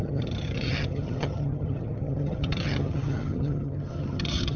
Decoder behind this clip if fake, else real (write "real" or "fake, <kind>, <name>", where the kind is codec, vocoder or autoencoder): fake, vocoder, HiFi-GAN